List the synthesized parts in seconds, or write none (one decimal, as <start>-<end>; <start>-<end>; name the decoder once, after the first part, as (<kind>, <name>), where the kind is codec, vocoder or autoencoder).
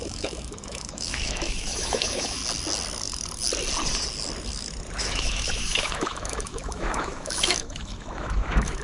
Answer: 0.0-2.4 (autoencoder, DAC-VAE); 5.0-8.8